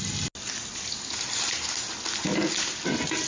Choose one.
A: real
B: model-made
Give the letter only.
A